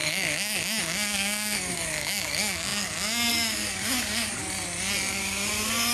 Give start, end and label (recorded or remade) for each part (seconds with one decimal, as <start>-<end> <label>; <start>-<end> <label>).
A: 0.0-4.4 remade; 4.4-5.1 recorded; 5.1-5.9 remade